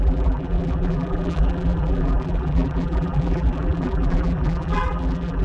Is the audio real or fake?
fake